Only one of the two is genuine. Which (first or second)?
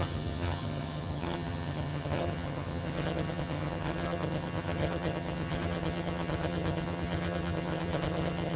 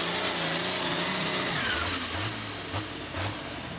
second